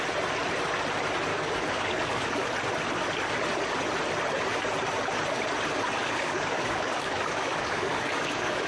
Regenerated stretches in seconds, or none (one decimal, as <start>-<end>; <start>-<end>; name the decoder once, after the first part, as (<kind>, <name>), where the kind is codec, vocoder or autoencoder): 1.3-2.5 (codec, DAC); 6.0-8.7